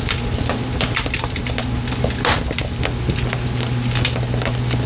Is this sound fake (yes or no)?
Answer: no